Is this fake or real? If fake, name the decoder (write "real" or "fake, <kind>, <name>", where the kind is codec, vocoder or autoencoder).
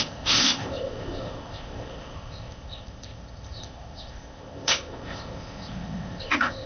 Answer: fake, codec, ZipCodec